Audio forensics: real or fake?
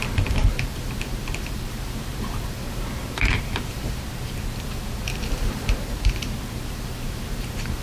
fake